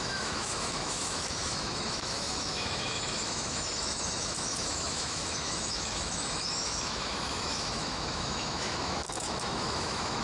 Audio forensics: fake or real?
fake